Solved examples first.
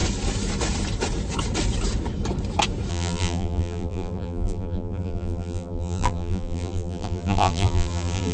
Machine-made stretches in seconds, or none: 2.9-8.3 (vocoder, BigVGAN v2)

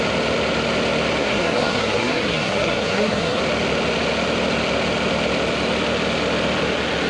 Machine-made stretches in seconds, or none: 1.2-3.4 (codec, SNAC)

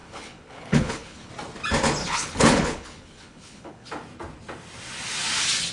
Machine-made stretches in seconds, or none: 0.0-1.3 (codec, HILCodec); 2.0-3.9

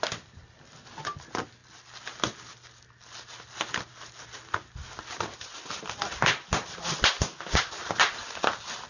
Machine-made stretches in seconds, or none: none

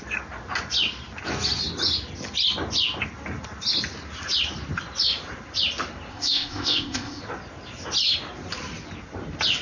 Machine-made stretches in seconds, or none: 6.1-7.2 (codec, ZipCodec)

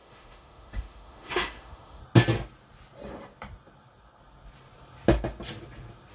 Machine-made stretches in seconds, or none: 0.0-2.0 (autoencoder, DAC-VAE)

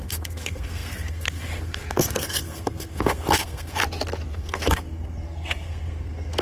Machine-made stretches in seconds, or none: 0.0-3.8 (codec, SNAC); 4.3-6.4